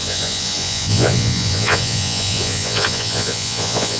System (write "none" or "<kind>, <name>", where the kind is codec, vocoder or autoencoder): vocoder, Vocos